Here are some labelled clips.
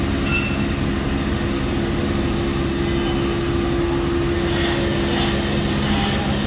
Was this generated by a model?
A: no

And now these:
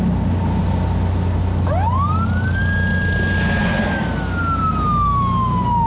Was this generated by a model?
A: no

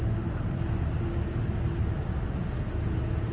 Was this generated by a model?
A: no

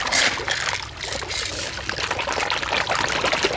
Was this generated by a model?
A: no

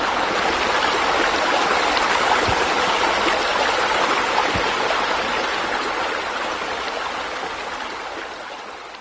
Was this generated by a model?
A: no